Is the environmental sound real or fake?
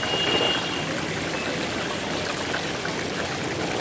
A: real